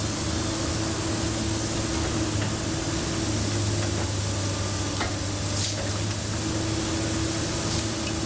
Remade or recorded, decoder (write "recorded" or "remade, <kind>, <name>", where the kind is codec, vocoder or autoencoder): recorded